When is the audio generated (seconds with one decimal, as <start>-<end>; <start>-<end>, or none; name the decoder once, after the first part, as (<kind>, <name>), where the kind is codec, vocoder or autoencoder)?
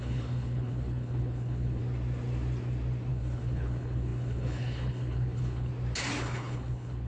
0.0-1.8 (codec, HILCodec); 3.1-5.7; 6.2-7.1